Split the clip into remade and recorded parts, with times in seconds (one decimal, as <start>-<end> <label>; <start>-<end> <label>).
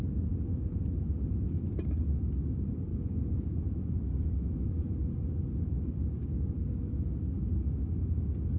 0.0-2.9 recorded; 2.9-3.5 remade; 3.5-6.0 recorded; 6.0-6.8 remade; 6.8-8.6 recorded